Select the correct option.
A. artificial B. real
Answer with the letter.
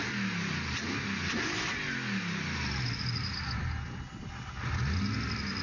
B